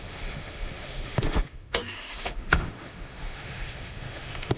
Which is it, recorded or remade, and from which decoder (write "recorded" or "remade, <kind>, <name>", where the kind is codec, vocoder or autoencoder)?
remade, autoencoder, DAC-VAE